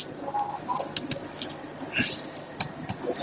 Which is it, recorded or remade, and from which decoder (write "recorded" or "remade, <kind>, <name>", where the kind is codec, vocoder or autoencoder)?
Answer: remade, vocoder, BigVGAN v2